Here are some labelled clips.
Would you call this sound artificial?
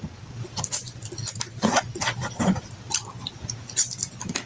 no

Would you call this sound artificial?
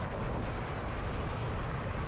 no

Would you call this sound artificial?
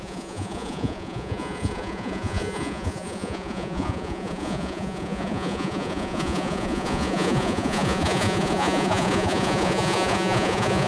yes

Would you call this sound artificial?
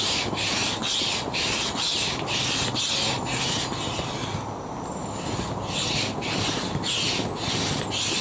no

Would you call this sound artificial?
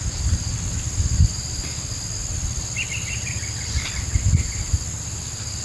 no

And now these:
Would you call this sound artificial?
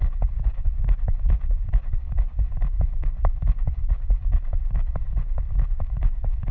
yes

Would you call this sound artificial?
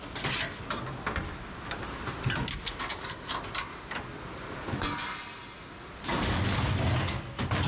no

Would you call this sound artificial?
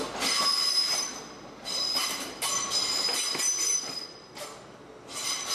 no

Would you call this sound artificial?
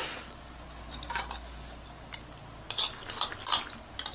no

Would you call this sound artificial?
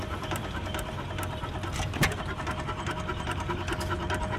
no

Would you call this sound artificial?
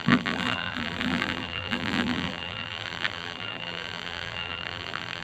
yes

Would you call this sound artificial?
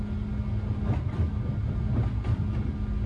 no